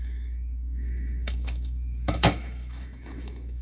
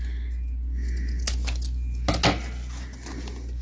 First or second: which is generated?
first